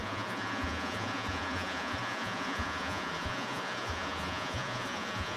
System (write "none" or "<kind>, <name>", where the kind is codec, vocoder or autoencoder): vocoder, Vocos